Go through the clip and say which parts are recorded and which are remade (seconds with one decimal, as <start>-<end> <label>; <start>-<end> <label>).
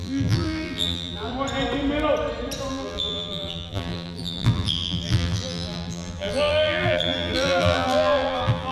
0.0-1.3 remade; 1.3-2.7 recorded; 2.7-8.7 remade